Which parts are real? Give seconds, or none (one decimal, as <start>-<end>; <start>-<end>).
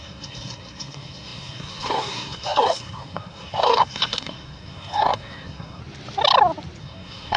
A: 5.8-6.8